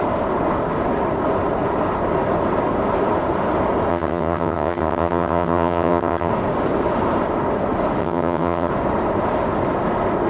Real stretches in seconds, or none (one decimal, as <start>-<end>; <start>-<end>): 0.0-3.9; 6.3-8.0; 8.7-10.3